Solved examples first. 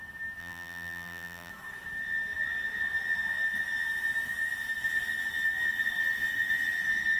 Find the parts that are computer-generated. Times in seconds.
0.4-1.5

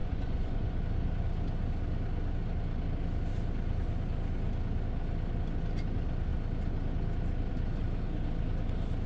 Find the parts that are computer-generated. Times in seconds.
0.0-0.8

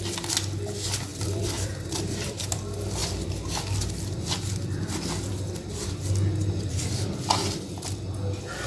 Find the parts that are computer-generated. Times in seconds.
1.1-2.5

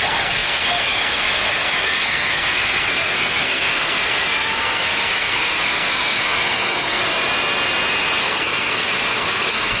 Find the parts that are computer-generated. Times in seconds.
0.0-7.0; 8.2-9.8

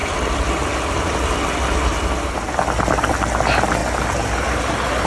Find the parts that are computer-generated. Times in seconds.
none

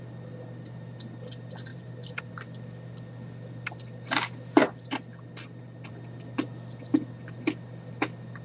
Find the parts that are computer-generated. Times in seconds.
1.7-2.3

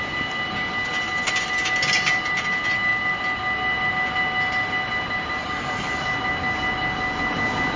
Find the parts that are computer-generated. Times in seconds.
5.4-6.0